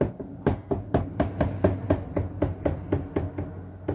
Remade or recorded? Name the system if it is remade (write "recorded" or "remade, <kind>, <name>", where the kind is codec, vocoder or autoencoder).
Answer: recorded